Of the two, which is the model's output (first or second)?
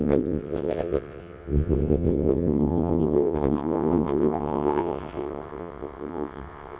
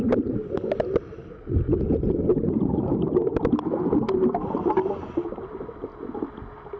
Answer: first